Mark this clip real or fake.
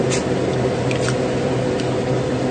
real